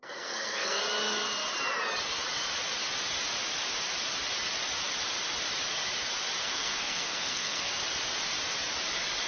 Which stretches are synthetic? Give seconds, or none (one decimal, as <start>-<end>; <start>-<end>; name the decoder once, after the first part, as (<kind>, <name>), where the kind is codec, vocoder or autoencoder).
0.0-0.8 (codec, SNAC); 6.4-7.7